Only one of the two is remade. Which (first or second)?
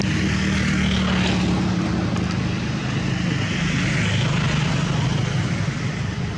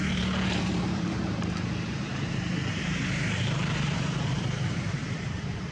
second